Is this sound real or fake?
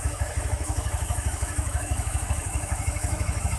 fake